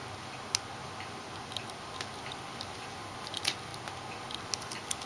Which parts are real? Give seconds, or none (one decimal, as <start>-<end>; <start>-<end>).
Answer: 0.0-2.4; 3.7-4.6